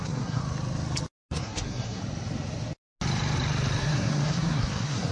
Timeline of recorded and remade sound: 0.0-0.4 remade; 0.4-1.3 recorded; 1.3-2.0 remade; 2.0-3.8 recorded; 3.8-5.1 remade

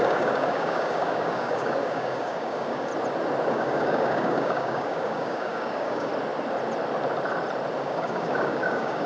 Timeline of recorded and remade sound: 0.0-2.9 remade; 2.9-3.5 recorded; 3.5-6.1 remade; 6.1-7.8 recorded; 7.8-9.1 remade

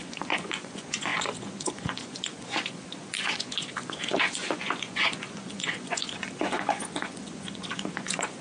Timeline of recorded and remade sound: 0.0-8.4 remade

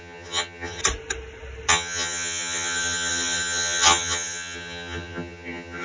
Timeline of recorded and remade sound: 0.0-0.8 remade; 0.8-1.7 recorded; 1.7-5.8 remade

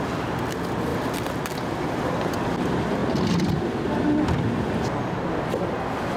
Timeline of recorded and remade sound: 0.0-6.2 recorded

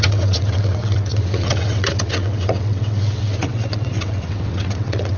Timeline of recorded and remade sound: 0.0-5.2 remade